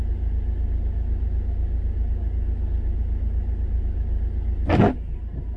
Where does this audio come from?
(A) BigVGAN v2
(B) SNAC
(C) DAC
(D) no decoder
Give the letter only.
D